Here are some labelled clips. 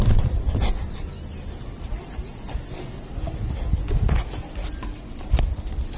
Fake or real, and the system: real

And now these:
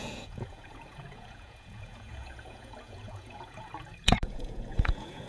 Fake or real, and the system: fake, vocoder, Vocos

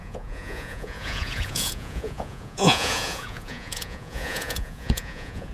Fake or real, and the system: fake, vocoder, Vocos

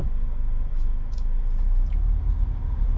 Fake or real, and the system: real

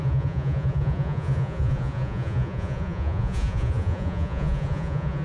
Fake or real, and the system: fake, vocoder, Vocos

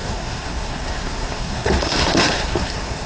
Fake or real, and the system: fake, codec, SNAC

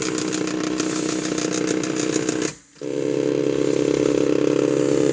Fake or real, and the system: real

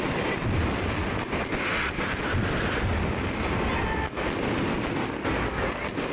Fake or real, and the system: real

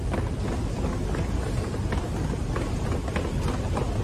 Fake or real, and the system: real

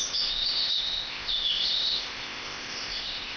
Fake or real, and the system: fake, codec, ZipCodec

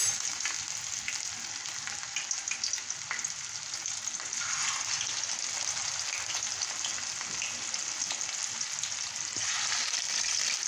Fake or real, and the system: real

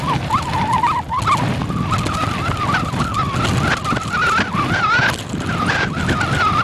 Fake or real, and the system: real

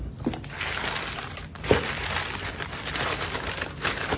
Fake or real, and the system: real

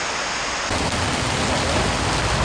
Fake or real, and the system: real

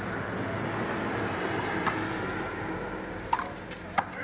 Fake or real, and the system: real